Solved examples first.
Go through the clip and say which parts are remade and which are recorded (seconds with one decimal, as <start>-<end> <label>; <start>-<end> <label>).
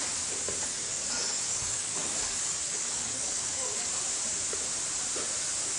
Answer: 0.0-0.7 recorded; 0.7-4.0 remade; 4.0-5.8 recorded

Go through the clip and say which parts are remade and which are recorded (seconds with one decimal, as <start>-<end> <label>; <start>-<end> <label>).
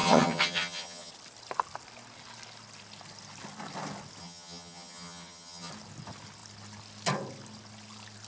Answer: 0.0-1.1 remade; 1.1-4.2 recorded; 4.2-5.7 remade; 5.7-8.3 recorded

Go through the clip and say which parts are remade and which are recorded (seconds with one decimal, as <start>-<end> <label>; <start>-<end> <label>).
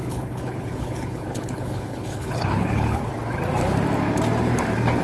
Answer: 0.0-3.0 remade; 3.0-5.0 recorded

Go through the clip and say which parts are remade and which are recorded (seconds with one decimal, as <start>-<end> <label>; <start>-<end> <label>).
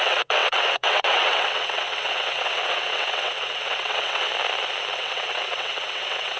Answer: 0.0-4.3 remade; 4.3-4.9 recorded; 4.9-6.4 remade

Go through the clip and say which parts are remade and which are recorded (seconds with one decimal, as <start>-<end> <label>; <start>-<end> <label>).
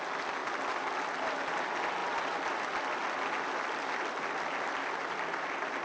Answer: 0.0-5.8 recorded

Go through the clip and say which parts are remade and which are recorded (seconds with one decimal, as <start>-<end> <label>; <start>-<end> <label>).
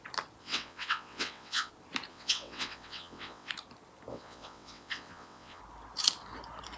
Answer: 0.0-0.4 recorded; 0.4-1.7 remade; 1.7-2.1 recorded; 2.1-3.5 remade; 3.5-4.1 recorded; 4.1-5.6 remade; 5.6-6.8 recorded